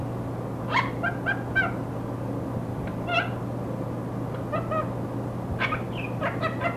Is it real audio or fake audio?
real